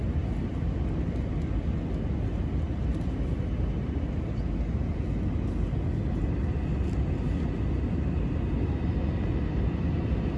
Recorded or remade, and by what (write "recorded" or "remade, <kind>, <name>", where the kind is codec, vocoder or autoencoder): recorded